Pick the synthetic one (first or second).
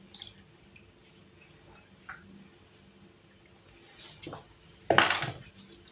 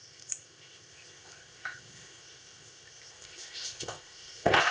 second